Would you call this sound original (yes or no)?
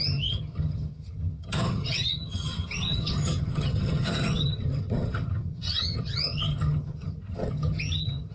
no